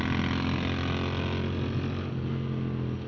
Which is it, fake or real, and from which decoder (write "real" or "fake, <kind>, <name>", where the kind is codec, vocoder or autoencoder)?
real